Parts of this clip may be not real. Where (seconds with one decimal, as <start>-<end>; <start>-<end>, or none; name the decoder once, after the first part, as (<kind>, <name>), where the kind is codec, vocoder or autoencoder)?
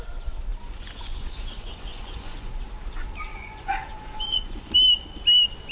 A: 0.6-2.5 (vocoder, Vocos); 3.3-4.7